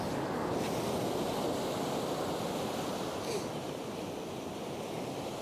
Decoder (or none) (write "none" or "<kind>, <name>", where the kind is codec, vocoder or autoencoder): none